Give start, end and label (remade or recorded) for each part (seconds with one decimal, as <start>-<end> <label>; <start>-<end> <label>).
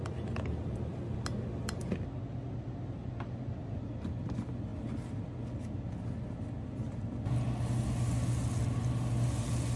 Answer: 0.0-9.8 recorded